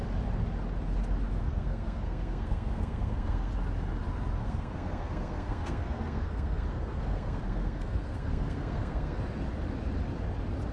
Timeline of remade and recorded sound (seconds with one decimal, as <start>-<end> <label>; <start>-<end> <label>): 0.0-1.4 recorded; 1.4-3.5 remade; 3.5-4.4 recorded; 4.4-9.2 remade; 9.2-10.7 recorded